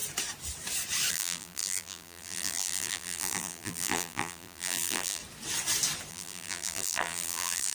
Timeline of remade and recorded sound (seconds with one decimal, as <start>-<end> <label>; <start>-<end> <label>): 0.0-1.1 recorded; 1.1-5.2 remade; 5.2-6.1 recorded; 6.1-7.7 remade